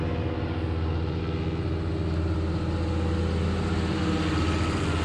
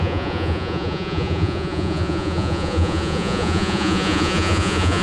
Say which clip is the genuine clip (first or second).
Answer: first